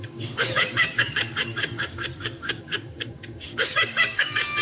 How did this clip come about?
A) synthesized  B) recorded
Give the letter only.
A